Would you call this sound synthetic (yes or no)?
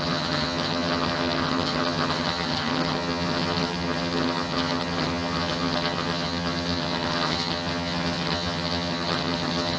yes